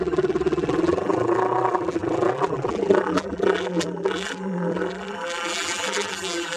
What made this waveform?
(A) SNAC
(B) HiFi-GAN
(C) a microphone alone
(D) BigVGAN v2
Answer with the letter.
D